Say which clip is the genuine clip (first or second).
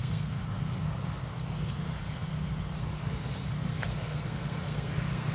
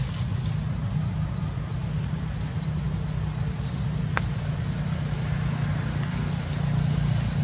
second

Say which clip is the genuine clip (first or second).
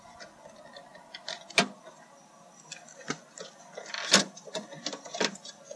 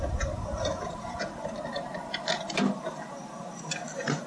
first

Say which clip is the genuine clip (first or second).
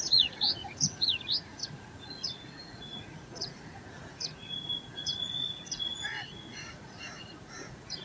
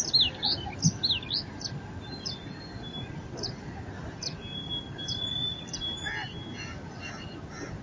second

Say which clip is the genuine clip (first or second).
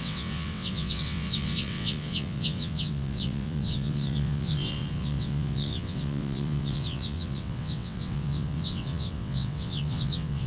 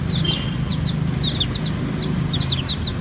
second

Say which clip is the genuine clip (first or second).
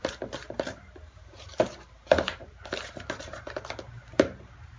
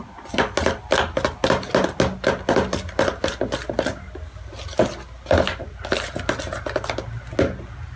second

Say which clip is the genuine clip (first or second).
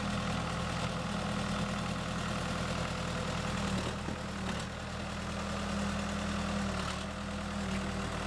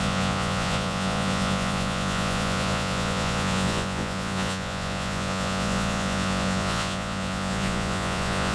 first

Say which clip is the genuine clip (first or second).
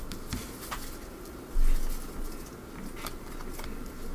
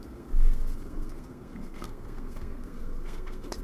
first